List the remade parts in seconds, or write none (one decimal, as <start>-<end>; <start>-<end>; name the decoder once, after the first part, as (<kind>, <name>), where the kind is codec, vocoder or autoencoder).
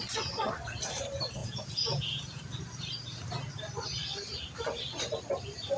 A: 1.4-2.4 (vocoder, Vocos)